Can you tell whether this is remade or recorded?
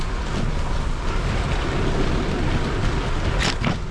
recorded